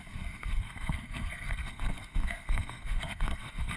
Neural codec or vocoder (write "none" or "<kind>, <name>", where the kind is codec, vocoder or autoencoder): codec, SNAC